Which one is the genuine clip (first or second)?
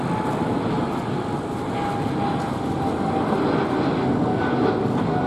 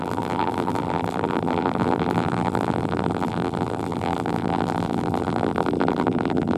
first